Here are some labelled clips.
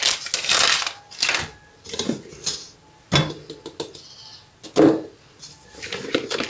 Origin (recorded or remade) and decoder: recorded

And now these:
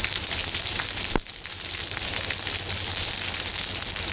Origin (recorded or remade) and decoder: recorded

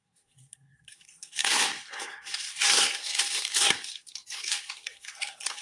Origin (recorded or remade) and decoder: remade, codec, SNAC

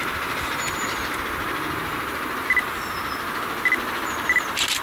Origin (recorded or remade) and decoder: remade, vocoder, BigVGAN v2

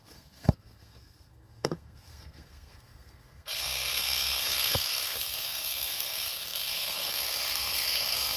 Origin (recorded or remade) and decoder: remade, codec, SNAC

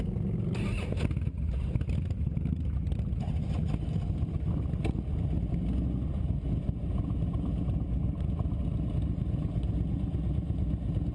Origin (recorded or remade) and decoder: recorded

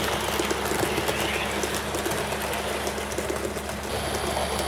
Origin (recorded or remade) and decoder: recorded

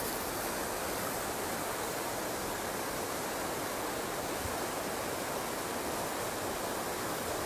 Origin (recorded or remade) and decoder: recorded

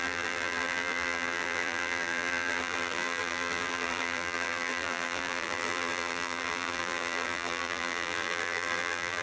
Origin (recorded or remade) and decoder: remade, vocoder, BigVGAN v2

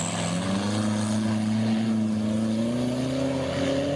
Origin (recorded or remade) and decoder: recorded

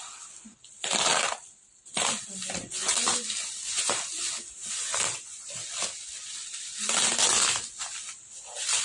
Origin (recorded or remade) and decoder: recorded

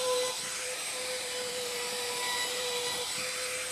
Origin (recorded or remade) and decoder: remade, vocoder, BigVGAN v2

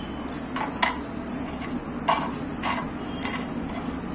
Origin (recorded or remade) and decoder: recorded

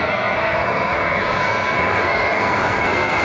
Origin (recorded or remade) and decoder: remade, codec, SNAC